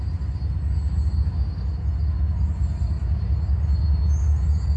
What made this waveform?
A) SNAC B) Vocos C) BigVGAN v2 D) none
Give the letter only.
D